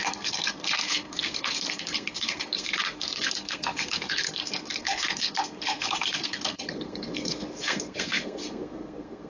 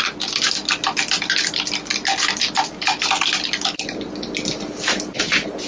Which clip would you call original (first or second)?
second